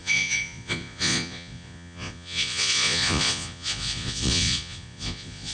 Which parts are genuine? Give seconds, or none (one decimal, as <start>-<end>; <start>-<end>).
none